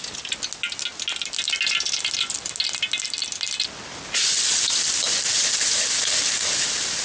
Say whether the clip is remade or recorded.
recorded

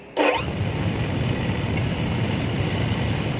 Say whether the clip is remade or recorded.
recorded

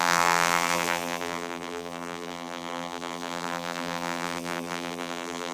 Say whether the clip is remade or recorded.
remade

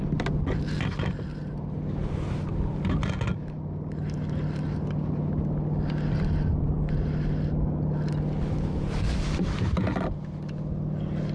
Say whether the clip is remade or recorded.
recorded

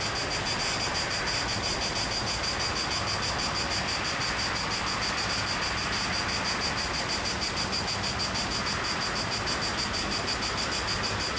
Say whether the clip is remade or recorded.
recorded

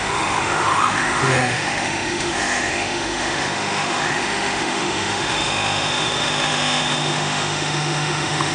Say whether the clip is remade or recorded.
remade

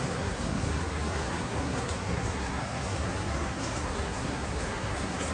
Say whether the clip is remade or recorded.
remade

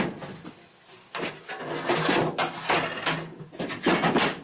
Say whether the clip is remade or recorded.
recorded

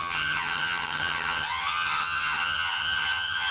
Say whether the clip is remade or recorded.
remade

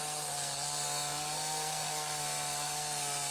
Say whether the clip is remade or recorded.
remade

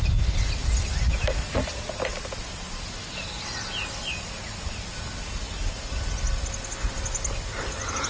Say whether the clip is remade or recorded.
recorded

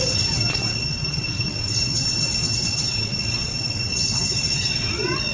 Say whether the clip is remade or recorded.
remade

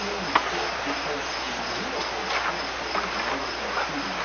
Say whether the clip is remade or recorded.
recorded